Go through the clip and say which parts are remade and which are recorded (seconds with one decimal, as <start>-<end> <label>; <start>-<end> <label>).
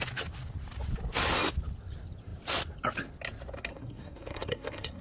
0.0-3.7 recorded; 3.7-5.0 remade